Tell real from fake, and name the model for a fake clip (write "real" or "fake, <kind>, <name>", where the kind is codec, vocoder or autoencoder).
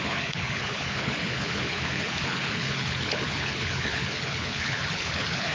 fake, codec, HILCodec